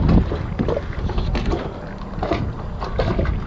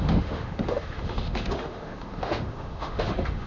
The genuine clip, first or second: first